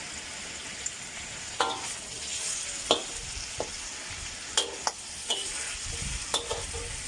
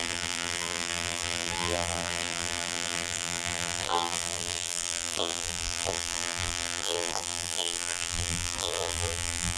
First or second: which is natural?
first